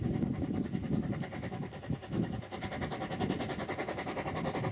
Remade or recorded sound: recorded